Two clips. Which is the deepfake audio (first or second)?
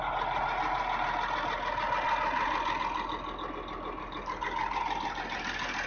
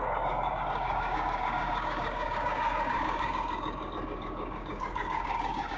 second